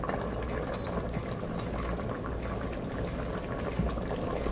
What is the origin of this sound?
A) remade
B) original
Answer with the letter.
B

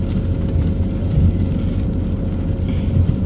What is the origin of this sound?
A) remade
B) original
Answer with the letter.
B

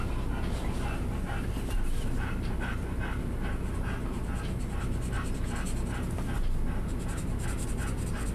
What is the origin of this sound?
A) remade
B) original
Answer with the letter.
B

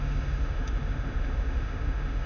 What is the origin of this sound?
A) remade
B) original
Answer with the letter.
A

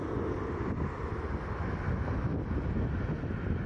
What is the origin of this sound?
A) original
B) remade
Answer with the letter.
A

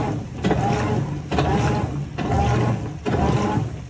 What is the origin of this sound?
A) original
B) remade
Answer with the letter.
A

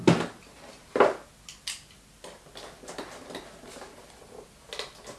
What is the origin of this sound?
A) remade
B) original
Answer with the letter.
B